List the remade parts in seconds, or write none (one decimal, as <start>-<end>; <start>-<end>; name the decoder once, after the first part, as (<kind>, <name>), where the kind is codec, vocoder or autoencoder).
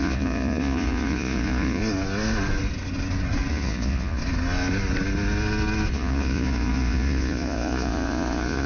0.0-1.8 (vocoder, Vocos); 3.5-4.2; 5.9-8.7